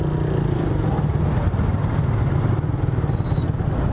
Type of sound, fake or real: real